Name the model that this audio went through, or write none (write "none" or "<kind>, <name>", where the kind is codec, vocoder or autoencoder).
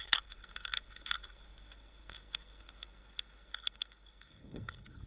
codec, SNAC